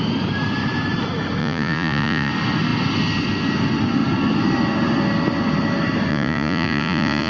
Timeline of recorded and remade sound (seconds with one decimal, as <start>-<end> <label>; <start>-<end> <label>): 0.0-1.4 recorded; 1.4-2.3 remade; 2.3-6.1 recorded; 6.1-7.3 remade

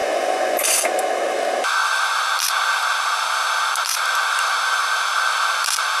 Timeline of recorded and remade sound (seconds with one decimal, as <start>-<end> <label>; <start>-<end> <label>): 0.0-0.8 remade; 0.8-6.0 recorded

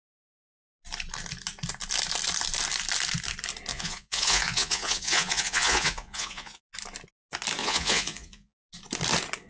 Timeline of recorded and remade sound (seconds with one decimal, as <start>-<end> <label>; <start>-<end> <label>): 0.0-3.7 recorded; 3.7-6.7 remade; 6.7-7.6 recorded; 7.6-8.7 remade; 8.7-9.5 recorded

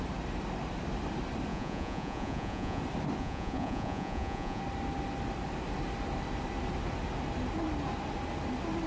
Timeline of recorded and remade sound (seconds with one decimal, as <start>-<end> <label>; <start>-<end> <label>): 0.0-1.5 recorded; 1.5-2.8 remade; 2.8-3.2 recorded; 3.2-4.6 remade; 4.6-8.9 recorded

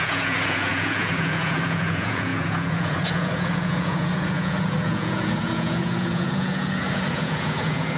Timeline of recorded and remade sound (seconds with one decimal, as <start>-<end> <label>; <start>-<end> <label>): 0.0-8.0 remade

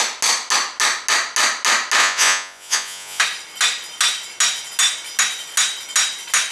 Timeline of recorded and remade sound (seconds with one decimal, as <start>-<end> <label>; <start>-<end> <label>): 0.0-2.0 recorded; 2.0-3.2 remade; 3.2-6.5 recorded

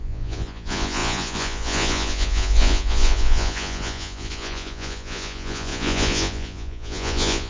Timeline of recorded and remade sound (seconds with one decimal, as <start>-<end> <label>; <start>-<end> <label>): 0.0-7.5 remade

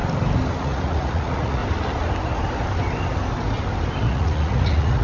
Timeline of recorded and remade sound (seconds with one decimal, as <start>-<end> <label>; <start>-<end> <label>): 0.0-0.6 recorded; 0.6-1.6 remade; 1.6-4.0 recorded; 4.0-5.0 remade